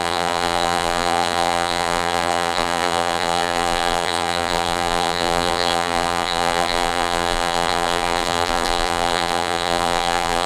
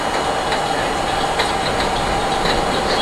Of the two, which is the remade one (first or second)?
first